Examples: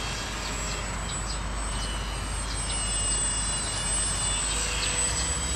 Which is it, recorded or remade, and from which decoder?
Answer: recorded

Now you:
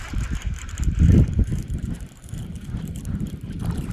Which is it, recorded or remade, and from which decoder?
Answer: remade, vocoder, BigVGAN v2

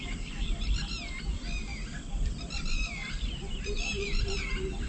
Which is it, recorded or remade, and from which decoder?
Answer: remade, vocoder, BigVGAN v2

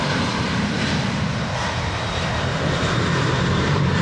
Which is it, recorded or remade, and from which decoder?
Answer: remade, vocoder, BigVGAN v2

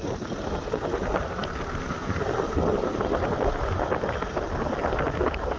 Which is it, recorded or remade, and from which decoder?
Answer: recorded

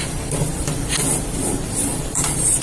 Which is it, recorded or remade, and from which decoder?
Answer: remade, vocoder, BigVGAN v2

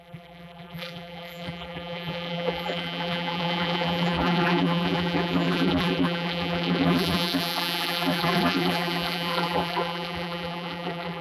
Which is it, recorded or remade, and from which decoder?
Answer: remade, vocoder, BigVGAN v2